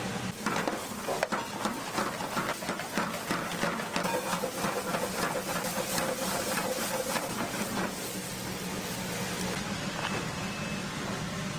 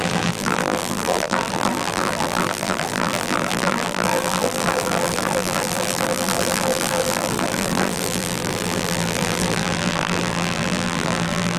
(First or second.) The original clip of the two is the first